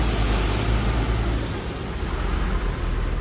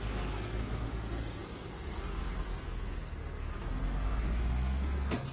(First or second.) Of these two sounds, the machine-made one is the second